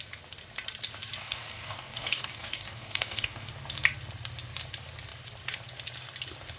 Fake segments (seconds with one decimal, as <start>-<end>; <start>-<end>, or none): 1.2-3.5